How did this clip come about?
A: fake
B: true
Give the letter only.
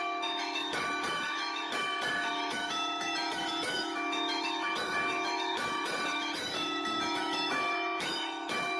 A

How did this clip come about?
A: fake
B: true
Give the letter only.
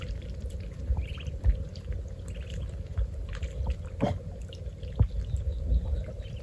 B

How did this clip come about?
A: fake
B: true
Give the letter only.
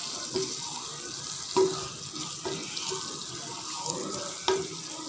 B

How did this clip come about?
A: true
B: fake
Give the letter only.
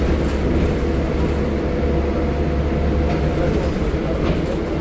A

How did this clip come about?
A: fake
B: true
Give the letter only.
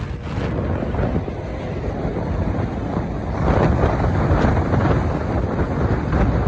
B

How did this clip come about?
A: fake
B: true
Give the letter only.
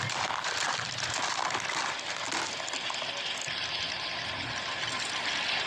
B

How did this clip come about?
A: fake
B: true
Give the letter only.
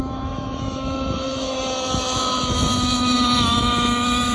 A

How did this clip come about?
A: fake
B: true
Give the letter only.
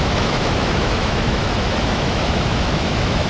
A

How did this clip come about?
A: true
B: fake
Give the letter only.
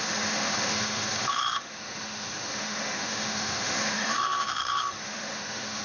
B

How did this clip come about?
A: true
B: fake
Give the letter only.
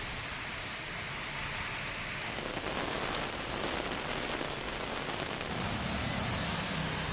A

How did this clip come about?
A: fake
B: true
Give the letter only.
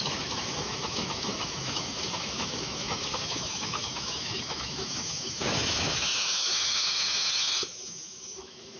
A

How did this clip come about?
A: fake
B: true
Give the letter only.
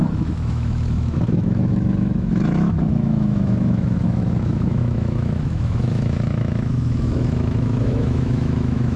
A